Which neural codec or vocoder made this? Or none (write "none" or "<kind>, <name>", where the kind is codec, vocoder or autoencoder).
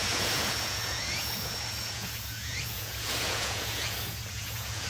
vocoder, Vocos